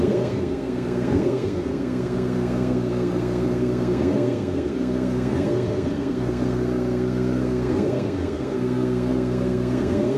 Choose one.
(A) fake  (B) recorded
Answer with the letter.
A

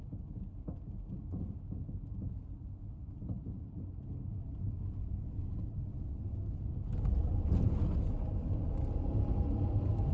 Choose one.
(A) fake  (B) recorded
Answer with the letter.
B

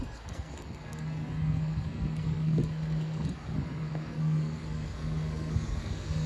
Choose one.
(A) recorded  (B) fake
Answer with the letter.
B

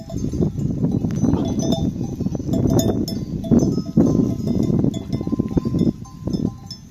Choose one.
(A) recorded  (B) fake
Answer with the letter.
A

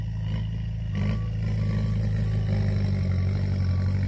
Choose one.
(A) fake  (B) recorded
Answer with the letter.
B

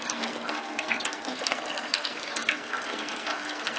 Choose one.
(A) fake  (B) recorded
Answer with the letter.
A